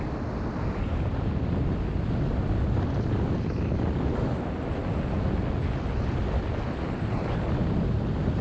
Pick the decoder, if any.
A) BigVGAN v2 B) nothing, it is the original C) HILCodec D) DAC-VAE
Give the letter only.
B